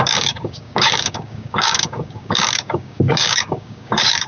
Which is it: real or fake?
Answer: fake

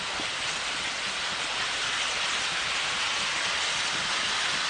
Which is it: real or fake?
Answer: real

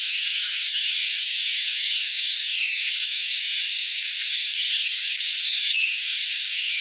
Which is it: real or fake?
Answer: fake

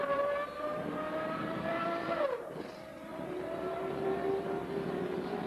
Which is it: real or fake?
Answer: fake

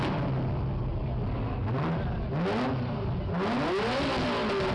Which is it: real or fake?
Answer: real